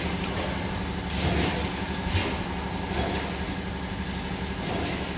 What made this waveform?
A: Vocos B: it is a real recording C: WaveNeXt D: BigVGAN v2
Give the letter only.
B